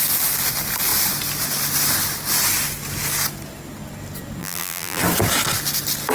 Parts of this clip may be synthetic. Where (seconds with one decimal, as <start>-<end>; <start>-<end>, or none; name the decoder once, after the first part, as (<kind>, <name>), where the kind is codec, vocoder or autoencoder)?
4.4-5.0 (vocoder, BigVGAN v2)